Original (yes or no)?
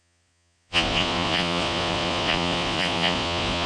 no